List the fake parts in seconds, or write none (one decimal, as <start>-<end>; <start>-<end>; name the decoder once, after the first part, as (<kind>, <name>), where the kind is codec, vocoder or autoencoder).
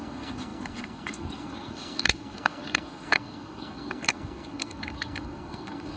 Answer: 0.0-6.0 (codec, SNAC)